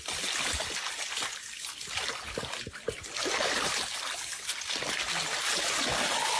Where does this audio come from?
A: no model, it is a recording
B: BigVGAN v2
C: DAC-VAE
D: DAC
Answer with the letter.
A